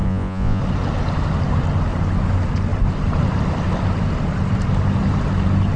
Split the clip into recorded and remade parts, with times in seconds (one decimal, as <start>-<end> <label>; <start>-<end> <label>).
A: 0.0-0.6 remade; 0.6-5.8 recorded